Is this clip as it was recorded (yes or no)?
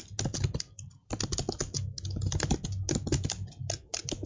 yes